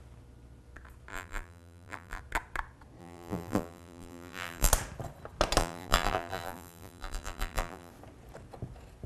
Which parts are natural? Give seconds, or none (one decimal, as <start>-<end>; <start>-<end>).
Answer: 0.0-1.1; 2.2-3.0; 4.7-5.6; 7.9-9.1